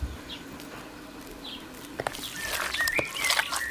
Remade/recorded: recorded